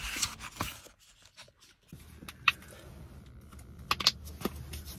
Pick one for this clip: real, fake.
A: real